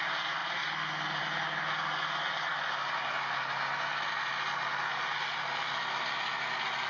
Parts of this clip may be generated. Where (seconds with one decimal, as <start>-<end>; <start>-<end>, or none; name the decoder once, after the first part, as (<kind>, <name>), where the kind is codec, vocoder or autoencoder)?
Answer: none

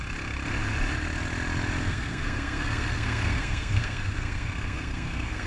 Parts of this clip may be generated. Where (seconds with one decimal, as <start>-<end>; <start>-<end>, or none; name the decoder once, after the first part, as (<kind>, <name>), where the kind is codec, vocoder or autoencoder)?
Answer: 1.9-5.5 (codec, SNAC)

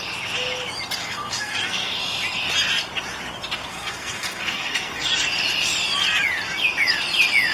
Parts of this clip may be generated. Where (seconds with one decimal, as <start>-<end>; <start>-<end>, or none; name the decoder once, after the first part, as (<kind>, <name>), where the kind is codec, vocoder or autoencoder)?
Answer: 1.0-2.0 (codec, SNAC); 3.7-5.1

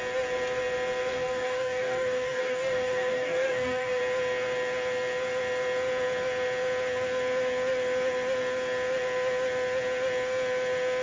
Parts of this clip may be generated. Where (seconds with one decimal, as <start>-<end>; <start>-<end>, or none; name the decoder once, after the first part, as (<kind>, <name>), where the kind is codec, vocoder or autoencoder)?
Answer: 1.1-4.0 (codec, DAC)

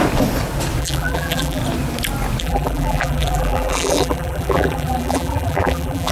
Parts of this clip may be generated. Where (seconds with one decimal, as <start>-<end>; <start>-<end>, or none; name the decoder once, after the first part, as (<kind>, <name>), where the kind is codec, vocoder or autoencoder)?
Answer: 0.8-1.6 (vocoder, BigVGAN v2); 2.4-6.1

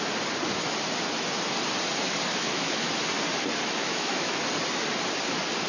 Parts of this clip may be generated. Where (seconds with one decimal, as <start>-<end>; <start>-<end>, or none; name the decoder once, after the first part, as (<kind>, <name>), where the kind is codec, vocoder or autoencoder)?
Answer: 2.3-2.9 (autoencoder, DAC-VAE); 3.8-4.4

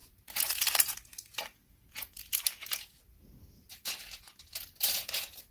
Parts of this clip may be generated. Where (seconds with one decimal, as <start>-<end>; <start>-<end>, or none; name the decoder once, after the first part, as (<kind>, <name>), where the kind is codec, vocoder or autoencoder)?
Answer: 0.0-5.5 (vocoder, Vocos)